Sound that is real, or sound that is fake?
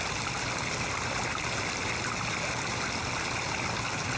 real